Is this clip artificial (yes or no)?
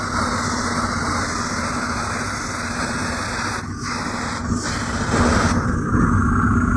no